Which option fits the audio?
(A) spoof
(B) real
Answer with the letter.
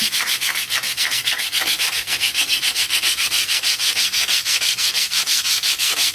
A